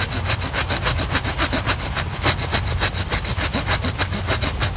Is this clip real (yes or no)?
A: yes